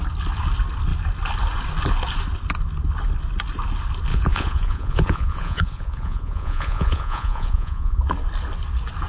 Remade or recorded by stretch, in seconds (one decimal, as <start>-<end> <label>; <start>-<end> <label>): 0.0-4.1 recorded; 4.1-8.0 remade; 8.0-9.1 recorded